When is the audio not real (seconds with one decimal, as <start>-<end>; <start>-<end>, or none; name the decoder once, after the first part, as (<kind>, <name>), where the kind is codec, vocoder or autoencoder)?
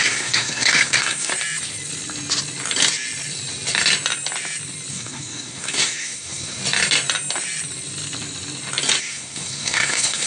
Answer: 0.0-1.3 (codec, SNAC); 4.9-6.6; 9.0-10.3